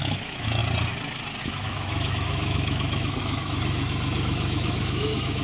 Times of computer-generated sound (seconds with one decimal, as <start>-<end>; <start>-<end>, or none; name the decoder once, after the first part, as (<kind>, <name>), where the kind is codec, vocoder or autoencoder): 0.0-0.6 (autoencoder, DAC-VAE); 1.4-5.4